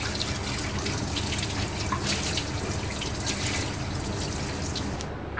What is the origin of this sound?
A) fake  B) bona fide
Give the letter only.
B